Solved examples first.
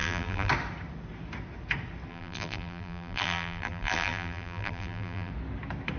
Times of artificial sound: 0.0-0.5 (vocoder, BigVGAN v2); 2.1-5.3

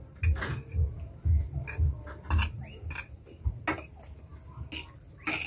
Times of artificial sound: none

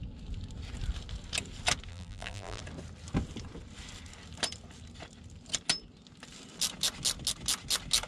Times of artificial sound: 1.9-2.6 (vocoder, BigVGAN v2)

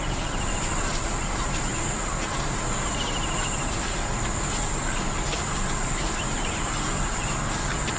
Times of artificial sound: none

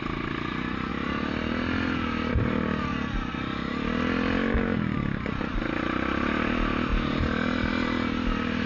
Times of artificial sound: none

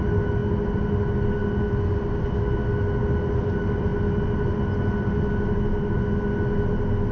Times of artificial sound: none

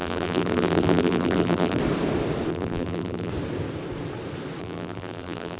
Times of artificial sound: 0.0-1.8 (vocoder, BigVGAN v2); 2.5-3.3; 4.6-5.6

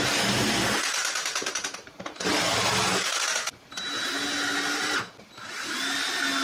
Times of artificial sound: 1.0-2.7 (vocoder, BigVGAN v2)